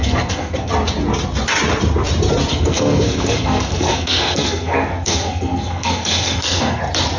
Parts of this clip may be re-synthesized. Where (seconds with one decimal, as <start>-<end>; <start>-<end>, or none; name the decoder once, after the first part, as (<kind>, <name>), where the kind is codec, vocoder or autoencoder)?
0.0-0.7 (codec, SNAC); 2.5-6.8